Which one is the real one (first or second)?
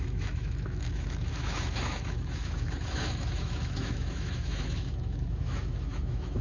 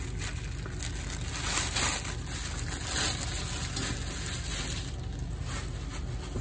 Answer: second